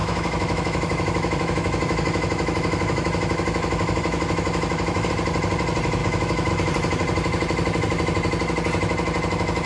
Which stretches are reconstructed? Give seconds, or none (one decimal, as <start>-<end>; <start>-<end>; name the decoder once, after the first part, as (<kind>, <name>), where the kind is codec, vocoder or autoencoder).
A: 0.0-5.1 (autoencoder, DAC-VAE); 6.0-6.5